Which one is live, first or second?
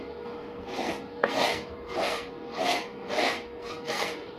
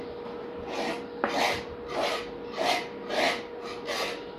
second